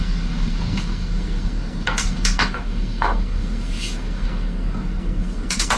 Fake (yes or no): yes